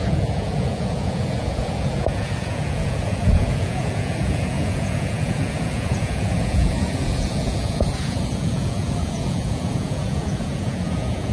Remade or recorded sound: remade